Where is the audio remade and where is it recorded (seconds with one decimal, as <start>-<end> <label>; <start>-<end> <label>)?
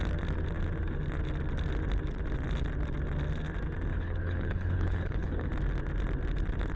0.0-3.9 recorded; 3.9-5.5 remade; 5.5-6.8 recorded